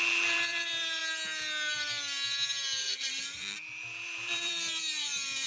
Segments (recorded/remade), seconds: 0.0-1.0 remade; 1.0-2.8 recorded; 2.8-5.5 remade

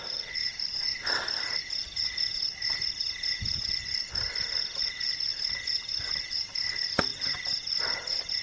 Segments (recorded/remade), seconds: 0.0-8.4 recorded

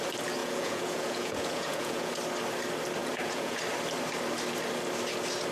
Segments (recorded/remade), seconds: 0.0-0.4 recorded; 0.4-2.1 remade; 2.1-3.0 recorded; 3.0-3.6 remade; 3.6-5.5 recorded

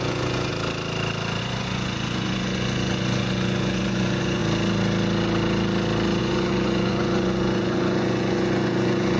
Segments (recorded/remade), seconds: 0.0-0.5 remade; 0.5-1.4 recorded; 1.4-4.4 remade; 4.4-6.2 recorded; 6.2-9.2 remade

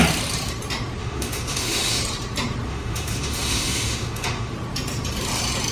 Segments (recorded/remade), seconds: 0.0-1.0 recorded; 1.0-2.0 remade; 2.0-2.7 recorded; 2.7-4.5 remade; 4.5-5.7 recorded